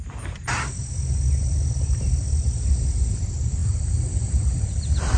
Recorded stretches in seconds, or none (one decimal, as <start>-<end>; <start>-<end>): 0.0-5.2